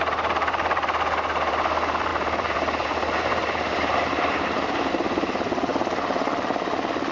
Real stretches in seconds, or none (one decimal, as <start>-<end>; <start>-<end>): 5.7-7.1